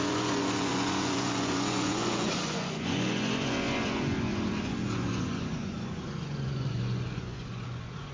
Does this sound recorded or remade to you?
remade